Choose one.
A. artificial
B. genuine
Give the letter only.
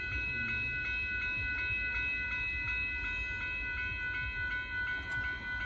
B